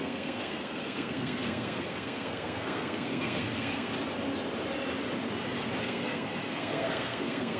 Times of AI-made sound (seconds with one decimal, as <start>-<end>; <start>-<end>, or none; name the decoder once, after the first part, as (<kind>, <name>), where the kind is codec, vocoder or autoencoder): 0.0-3.9 (codec, SNAC); 5.8-7.6